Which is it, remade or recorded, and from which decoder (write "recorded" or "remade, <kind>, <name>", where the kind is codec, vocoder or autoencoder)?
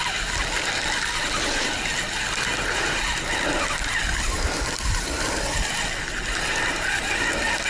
recorded